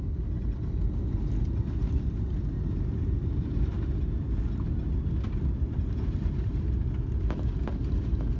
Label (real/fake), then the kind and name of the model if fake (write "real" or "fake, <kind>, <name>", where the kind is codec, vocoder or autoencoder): real